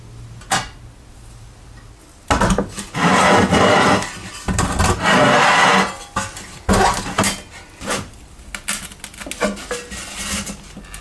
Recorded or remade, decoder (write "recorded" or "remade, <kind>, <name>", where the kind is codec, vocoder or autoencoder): recorded